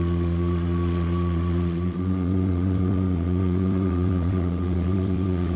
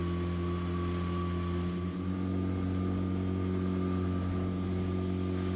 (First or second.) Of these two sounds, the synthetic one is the first